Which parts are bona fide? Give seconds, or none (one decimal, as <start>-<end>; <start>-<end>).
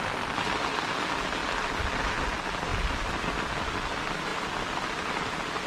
0.0-5.7